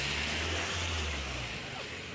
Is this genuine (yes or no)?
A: yes